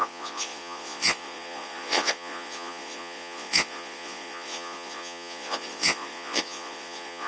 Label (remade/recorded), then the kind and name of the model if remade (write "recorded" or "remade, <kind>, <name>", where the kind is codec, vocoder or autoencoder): remade, vocoder, Vocos